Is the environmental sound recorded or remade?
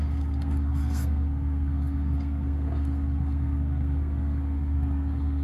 remade